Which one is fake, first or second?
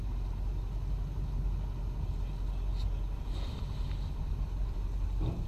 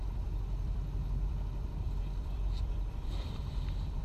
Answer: second